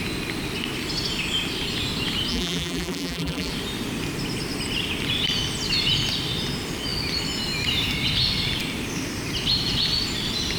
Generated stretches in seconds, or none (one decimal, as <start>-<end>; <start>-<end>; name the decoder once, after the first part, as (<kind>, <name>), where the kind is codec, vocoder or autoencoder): 2.3-3.5 (vocoder, BigVGAN v2)